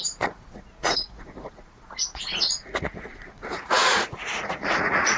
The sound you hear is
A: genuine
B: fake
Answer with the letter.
B